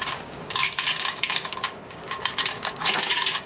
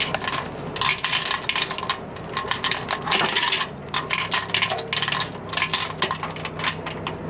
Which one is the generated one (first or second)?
first